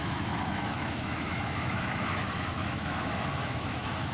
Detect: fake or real fake